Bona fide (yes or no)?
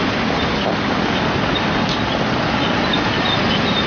yes